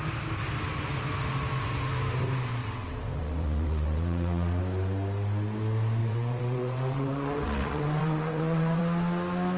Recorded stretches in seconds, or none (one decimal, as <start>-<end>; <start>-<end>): 0.0-2.6; 4.6-6.0; 8.8-9.6